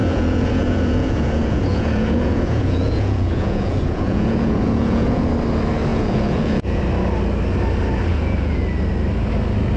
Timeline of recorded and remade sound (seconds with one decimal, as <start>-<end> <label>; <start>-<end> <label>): 0.0-5.3 remade; 5.3-5.9 recorded; 5.9-6.8 remade; 6.8-8.1 recorded; 8.1-8.7 remade; 8.7-9.8 recorded